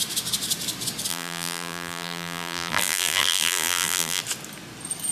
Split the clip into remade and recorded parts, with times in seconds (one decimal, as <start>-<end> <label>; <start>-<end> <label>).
0.0-1.1 recorded; 1.1-4.2 remade; 4.2-5.1 recorded